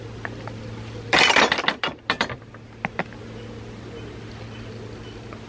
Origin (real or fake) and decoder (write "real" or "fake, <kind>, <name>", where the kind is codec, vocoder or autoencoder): real